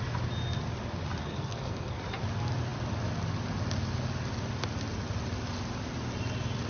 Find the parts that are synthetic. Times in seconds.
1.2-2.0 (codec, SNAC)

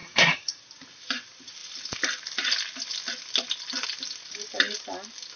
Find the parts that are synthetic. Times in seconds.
0.0-0.6 (codec, DAC)

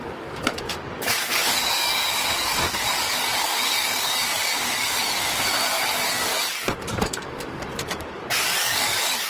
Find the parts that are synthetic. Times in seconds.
0.0-9.3 (codec, DAC)

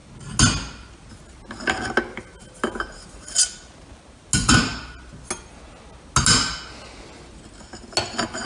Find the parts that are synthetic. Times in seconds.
none

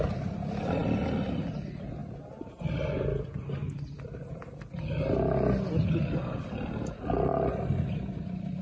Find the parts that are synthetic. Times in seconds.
none

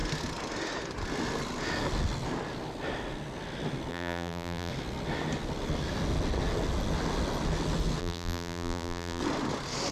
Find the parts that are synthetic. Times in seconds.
3.9-4.7 (vocoder, BigVGAN v2); 8.0-9.2

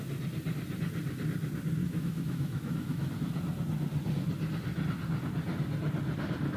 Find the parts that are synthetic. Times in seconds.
1.8-3.1 (autoencoder, DAC-VAE)